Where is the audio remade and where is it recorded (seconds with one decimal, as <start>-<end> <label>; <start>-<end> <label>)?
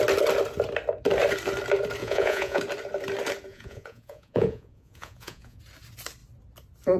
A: 0.0-2.0 recorded; 2.0-2.6 remade; 2.6-3.5 recorded; 3.5-5.6 remade; 5.6-7.0 recorded